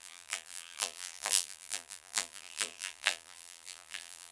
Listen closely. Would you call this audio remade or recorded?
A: remade